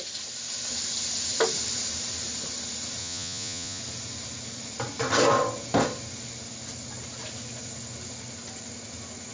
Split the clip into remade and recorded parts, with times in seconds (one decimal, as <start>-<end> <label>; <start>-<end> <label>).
0.0-3.0 recorded; 3.0-3.8 remade; 3.8-9.3 recorded